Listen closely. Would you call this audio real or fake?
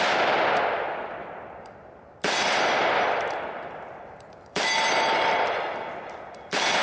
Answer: fake